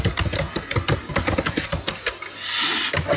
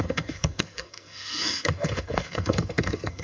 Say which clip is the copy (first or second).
second